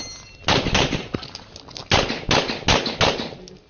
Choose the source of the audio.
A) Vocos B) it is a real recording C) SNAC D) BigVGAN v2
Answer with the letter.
B